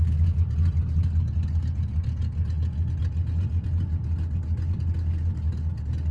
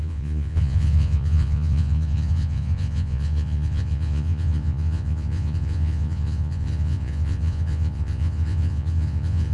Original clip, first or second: first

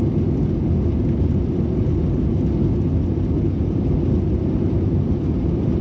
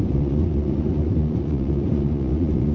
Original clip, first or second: first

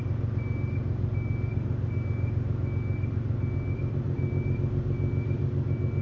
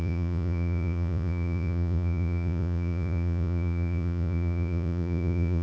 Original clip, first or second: first